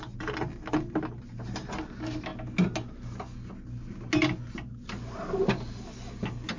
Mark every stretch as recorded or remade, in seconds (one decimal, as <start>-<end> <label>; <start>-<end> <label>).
0.0-6.6 recorded